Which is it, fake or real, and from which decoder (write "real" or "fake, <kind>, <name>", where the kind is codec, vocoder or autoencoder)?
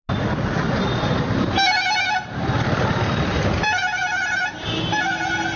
real